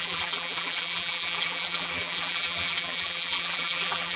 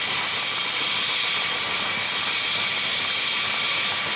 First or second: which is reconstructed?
first